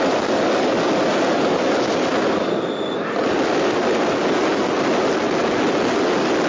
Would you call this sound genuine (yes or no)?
yes